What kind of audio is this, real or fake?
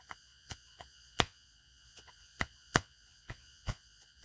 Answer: fake